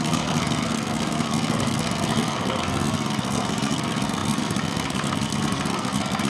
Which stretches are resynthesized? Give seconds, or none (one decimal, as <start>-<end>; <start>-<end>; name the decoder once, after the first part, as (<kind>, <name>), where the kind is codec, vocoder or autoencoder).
0.0-6.3 (codec, SNAC)